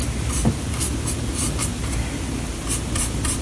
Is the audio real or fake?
real